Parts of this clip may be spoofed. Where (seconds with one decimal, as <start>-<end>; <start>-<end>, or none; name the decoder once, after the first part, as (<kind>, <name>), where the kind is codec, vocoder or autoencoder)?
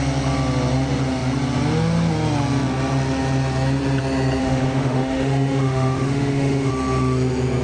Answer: 4.4-6.7 (autoencoder, DAC-VAE)